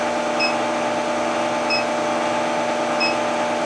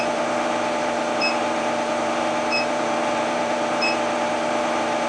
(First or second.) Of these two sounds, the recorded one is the first